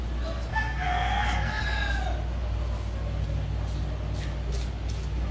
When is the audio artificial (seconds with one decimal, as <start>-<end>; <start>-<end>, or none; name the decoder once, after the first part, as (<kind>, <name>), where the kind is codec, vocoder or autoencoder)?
0.5-1.6 (codec, SNAC)